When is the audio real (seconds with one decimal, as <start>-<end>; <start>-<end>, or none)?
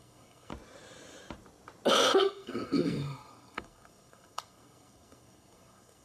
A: 0.5-1.9